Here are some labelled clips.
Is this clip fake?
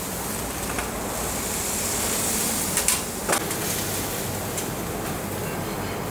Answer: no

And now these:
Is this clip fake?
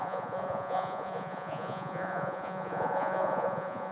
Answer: yes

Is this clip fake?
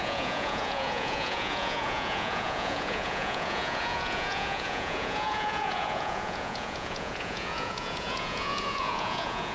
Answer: yes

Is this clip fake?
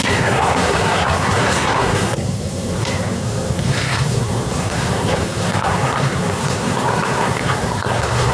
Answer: yes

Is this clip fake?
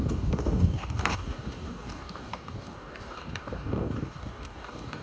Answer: yes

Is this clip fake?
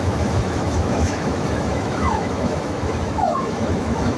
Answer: yes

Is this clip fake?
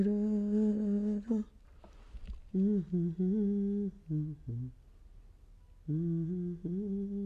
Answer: no